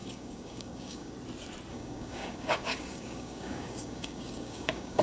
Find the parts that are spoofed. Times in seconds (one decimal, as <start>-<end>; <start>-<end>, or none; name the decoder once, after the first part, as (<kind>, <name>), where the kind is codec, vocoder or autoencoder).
0.0-1.1 (codec, DAC); 1.7-5.0